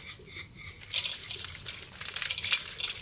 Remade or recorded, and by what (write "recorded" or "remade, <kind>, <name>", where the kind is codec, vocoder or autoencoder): recorded